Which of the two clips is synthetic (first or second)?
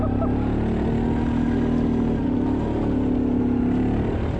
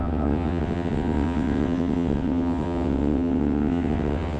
second